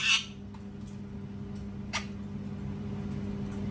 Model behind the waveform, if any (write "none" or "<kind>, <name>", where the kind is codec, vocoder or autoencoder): none